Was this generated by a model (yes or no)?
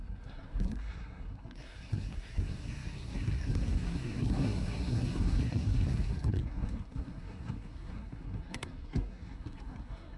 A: yes